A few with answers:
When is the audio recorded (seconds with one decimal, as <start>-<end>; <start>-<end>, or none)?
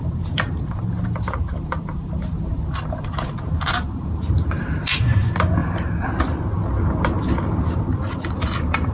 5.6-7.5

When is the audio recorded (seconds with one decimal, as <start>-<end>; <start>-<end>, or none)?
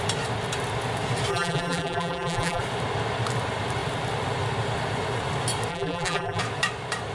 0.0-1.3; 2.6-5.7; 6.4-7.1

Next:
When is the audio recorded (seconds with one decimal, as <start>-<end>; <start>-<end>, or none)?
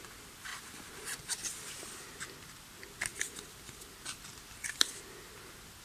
0.0-0.5; 1.5-5.8